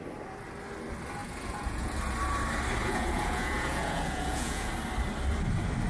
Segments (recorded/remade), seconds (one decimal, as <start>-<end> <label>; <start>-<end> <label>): 0.0-1.2 recorded; 1.2-1.9 remade; 1.9-2.8 recorded; 2.8-4.7 remade; 4.7-5.9 recorded